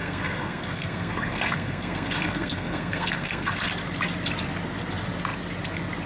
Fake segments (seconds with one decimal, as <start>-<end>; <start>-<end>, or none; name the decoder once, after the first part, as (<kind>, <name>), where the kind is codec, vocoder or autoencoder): 0.0-3.7 (codec, SNAC)